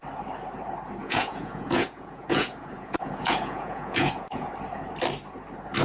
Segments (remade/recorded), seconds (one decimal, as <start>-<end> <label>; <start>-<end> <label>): 0.0-1.0 recorded; 1.0-4.5 remade; 4.5-5.8 recorded